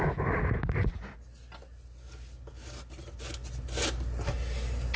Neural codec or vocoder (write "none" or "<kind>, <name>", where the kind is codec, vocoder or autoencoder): none